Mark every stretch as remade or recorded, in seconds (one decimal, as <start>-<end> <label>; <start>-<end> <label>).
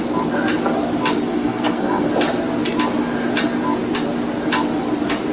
0.0-1.3 recorded; 1.3-2.1 remade; 2.1-5.3 recorded